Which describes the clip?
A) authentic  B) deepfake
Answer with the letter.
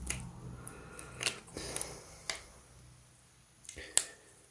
A